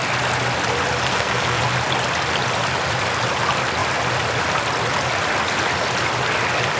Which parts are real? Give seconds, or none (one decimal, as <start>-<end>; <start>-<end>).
0.0-1.1; 1.6-6.8